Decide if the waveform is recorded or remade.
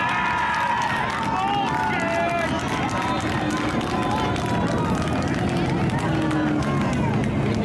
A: recorded